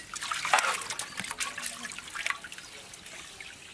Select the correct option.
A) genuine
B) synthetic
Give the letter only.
A